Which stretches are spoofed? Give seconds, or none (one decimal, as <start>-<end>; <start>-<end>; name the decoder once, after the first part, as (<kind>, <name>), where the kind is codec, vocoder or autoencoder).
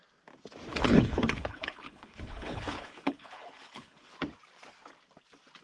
0.7-4.1 (codec, HILCodec)